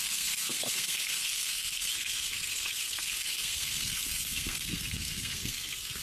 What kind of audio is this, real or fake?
fake